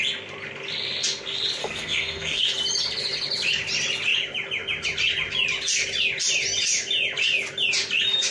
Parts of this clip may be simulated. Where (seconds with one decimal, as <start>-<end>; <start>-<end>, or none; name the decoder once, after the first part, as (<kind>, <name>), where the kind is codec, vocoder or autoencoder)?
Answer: 1.6-2.4 (codec, SNAC)